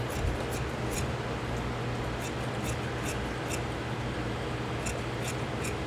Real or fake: real